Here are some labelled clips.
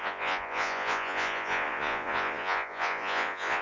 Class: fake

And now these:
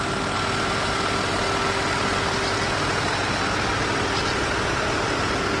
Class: real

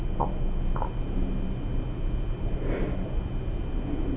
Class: real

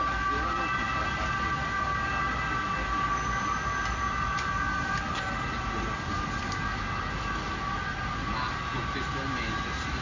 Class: real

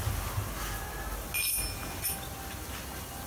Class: real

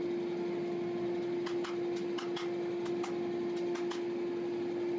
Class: real